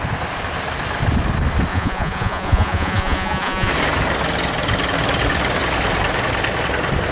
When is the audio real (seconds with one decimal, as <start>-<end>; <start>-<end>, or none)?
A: 0.0-1.7; 3.7-7.1